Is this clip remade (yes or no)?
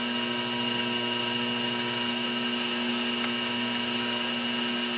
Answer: no